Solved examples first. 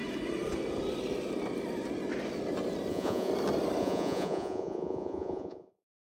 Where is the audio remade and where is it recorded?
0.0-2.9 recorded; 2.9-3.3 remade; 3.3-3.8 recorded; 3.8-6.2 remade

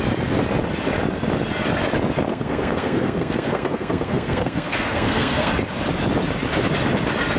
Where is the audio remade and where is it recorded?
0.0-2.3 recorded; 2.3-5.5 remade; 5.5-7.4 recorded

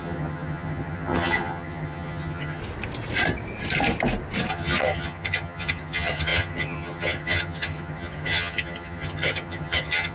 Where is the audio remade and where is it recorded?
0.0-2.6 remade; 2.6-4.5 recorded; 4.5-10.1 remade